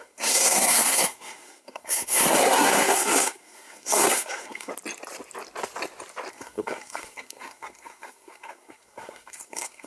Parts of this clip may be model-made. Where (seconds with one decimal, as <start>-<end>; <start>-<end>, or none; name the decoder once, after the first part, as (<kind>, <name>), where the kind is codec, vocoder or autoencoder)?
0.0-4.7 (codec, SNAC); 6.3-9.9